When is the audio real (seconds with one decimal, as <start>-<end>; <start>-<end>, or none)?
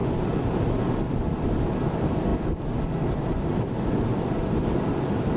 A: 0.0-1.9